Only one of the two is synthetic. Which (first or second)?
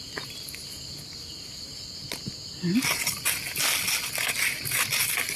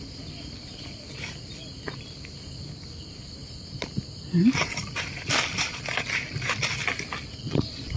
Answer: second